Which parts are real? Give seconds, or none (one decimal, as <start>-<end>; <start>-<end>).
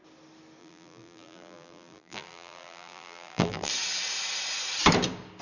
0.0-0.6; 3.7-5.4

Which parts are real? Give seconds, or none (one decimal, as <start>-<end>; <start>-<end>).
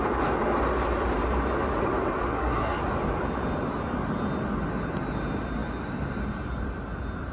0.0-2.3; 2.8-7.3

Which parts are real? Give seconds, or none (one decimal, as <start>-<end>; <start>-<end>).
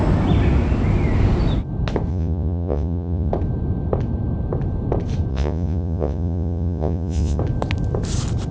0.0-2.1; 3.3-5.3; 7.4-8.5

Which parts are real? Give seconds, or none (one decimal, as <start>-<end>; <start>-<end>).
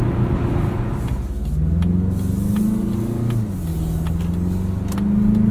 0.0-5.5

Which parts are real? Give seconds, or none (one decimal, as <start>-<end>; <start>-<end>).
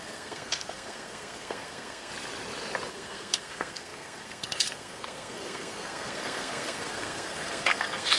2.1-2.9